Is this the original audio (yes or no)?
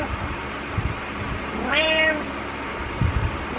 no